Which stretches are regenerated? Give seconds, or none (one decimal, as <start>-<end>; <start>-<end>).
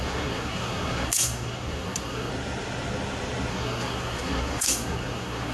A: 0.0-2.3; 3.5-5.5